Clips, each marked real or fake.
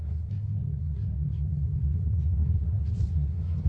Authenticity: fake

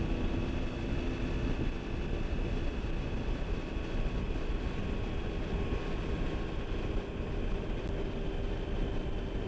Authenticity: real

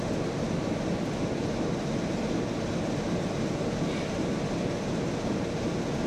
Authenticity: real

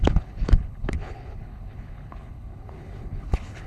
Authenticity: fake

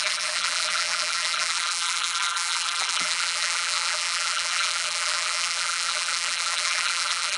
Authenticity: fake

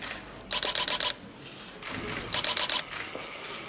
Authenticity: real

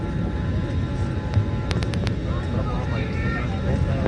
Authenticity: real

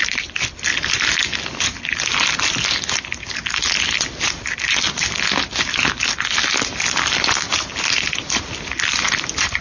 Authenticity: real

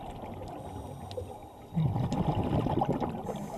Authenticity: real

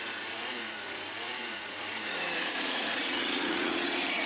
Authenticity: fake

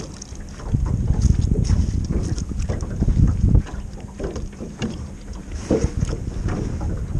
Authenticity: real